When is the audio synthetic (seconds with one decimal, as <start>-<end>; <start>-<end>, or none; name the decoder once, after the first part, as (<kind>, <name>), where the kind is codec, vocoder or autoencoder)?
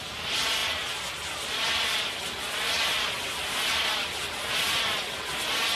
none